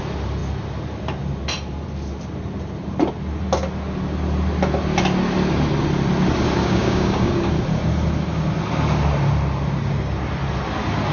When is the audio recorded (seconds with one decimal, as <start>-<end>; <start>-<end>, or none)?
0.0-6.6; 7.5-11.1